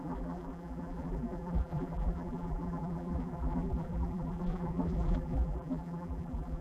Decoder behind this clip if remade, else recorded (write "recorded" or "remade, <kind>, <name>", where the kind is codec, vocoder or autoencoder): remade, vocoder, BigVGAN v2